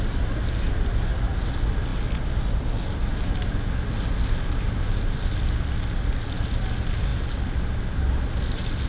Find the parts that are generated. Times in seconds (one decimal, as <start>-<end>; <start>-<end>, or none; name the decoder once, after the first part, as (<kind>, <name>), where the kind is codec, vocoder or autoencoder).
none